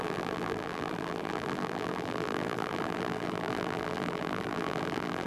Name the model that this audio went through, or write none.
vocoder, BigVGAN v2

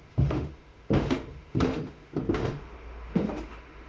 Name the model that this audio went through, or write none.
autoencoder, DAC-VAE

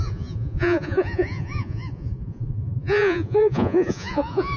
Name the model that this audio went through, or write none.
vocoder, Vocos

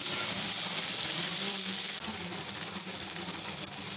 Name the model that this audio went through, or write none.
none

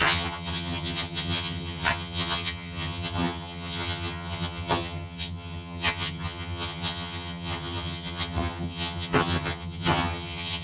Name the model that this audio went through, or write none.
vocoder, HiFi-GAN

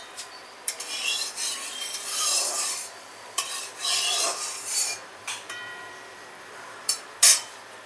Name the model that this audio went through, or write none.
vocoder, BigVGAN v2